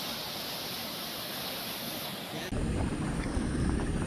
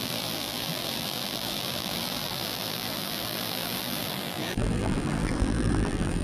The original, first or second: first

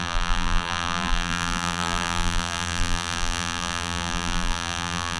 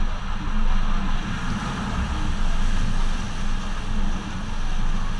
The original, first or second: second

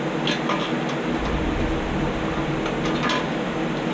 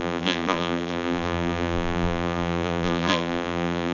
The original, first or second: first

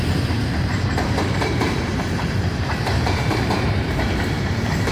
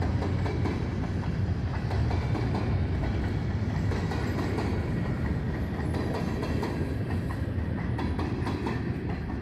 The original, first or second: second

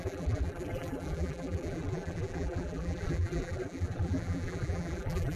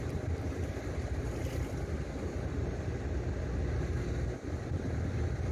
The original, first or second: second